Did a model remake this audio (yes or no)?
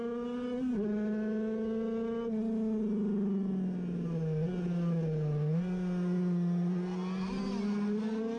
no